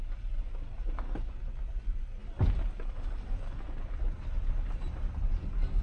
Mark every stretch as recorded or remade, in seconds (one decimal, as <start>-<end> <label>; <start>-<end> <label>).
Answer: 0.0-0.7 recorded; 0.7-4.0 remade; 4.0-5.8 recorded